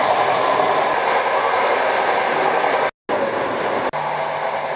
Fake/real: real